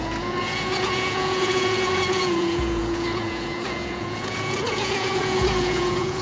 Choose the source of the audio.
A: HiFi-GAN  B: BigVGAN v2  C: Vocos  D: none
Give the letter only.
C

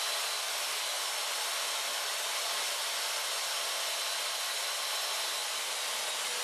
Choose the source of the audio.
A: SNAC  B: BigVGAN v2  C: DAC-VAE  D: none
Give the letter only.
D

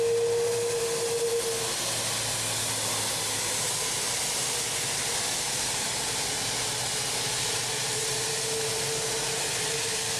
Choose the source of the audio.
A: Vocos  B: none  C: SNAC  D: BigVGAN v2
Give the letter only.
B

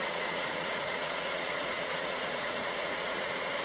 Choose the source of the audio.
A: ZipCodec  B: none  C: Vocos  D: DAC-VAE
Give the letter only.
C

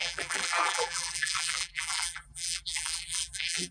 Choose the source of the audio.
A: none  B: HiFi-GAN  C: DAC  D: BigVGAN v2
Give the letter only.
D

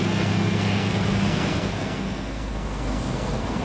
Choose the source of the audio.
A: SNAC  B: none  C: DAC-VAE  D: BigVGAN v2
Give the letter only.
A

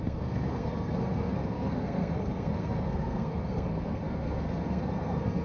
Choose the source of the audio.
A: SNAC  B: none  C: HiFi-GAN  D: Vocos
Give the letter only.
A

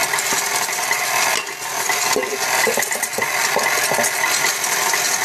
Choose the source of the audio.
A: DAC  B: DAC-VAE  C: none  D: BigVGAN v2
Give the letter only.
C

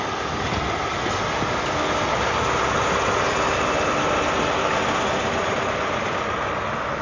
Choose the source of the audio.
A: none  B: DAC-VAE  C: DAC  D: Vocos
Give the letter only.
A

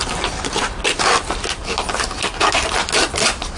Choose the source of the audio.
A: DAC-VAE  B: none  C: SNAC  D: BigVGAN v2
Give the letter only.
B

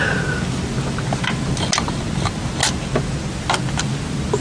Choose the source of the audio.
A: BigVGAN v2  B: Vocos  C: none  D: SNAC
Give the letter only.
C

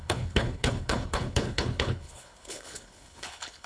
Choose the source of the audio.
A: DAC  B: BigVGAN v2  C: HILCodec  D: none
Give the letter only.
C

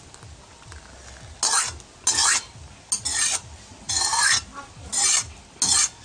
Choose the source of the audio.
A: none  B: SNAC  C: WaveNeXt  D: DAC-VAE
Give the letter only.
A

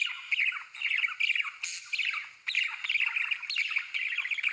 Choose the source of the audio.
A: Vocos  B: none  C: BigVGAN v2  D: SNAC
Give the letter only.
B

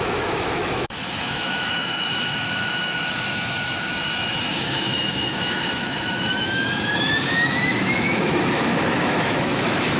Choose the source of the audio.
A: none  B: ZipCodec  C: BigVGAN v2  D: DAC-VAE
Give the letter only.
D